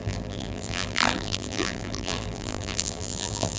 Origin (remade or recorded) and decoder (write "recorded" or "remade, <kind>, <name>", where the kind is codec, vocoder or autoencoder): remade, vocoder, BigVGAN v2